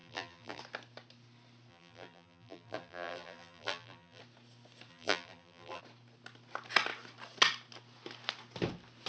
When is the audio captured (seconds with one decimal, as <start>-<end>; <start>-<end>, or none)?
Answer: 0.6-1.7; 4.2-4.9; 5.8-9.1